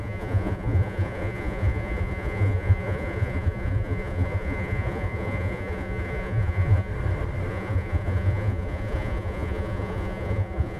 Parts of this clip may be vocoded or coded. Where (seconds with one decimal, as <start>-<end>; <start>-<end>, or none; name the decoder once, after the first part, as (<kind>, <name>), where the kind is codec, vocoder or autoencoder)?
0.0-6.9 (vocoder, Vocos); 7.5-10.8